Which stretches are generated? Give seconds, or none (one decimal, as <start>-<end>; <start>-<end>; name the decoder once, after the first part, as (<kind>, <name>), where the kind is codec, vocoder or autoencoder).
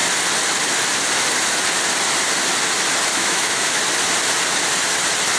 3.1-3.8 (autoencoder, DAC-VAE)